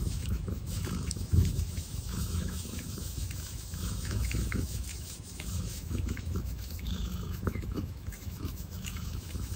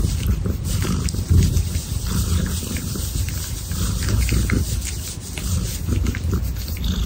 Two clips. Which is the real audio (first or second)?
second